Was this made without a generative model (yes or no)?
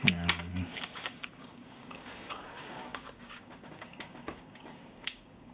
no